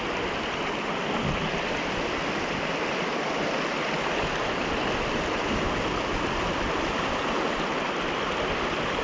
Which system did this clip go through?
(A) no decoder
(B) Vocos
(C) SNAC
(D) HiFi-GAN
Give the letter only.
A